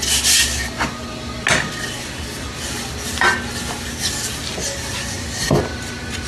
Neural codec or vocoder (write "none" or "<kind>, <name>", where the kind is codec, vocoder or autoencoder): none